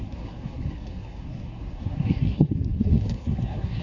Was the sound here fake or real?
fake